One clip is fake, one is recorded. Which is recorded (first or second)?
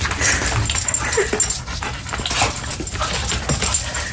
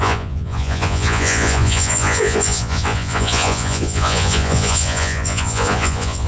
first